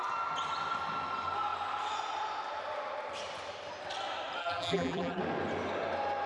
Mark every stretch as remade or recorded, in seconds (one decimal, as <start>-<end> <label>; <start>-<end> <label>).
0.0-4.4 recorded; 4.4-5.2 remade; 5.2-6.3 recorded